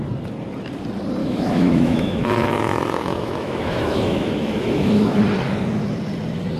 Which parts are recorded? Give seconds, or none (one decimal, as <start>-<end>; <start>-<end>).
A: 0.0-1.2; 5.2-6.6